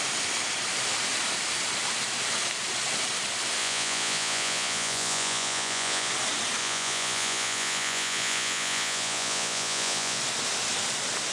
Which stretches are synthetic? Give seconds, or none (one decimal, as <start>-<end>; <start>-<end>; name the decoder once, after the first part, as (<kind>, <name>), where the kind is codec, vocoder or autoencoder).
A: 3.6-6.1 (vocoder, Vocos); 6.6-10.2